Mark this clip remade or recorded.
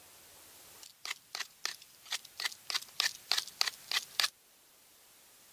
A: recorded